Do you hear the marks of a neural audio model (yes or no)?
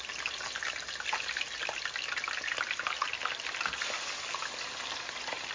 no